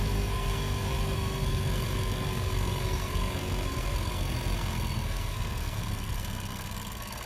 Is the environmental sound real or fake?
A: fake